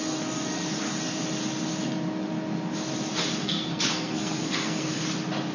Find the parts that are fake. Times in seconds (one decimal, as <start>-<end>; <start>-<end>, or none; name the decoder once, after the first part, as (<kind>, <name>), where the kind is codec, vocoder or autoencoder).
3.4-5.0 (codec, SNAC)